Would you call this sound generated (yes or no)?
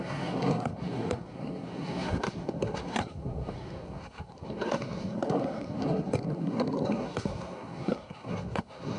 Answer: yes